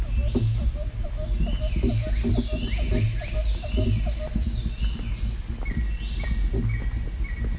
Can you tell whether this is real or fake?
real